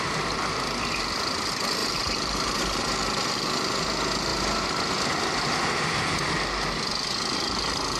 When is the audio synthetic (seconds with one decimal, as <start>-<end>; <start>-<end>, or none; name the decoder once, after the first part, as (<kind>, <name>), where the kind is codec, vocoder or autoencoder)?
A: 1.8-3.2 (vocoder, BigVGAN v2)